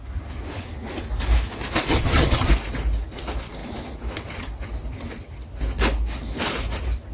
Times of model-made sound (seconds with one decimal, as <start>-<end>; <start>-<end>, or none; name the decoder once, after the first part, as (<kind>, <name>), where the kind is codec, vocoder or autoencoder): 1.9-2.5 (vocoder, HiFi-GAN)